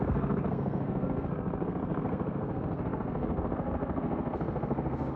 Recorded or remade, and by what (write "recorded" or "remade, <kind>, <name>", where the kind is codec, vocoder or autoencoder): remade, codec, SNAC